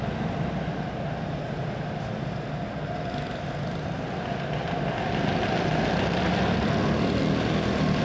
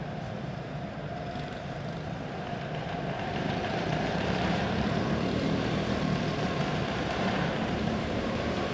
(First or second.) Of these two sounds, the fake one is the second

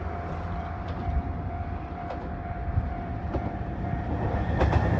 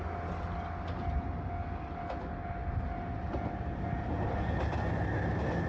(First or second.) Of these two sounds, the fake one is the first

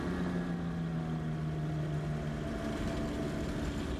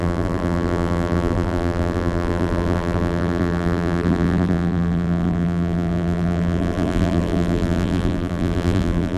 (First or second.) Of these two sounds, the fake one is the second